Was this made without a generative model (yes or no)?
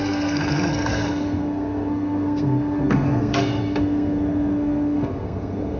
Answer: no